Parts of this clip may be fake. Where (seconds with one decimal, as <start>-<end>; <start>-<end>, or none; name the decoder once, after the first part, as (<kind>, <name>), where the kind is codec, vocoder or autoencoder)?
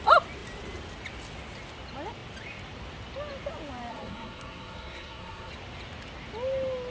3.9-5.5 (codec, SNAC)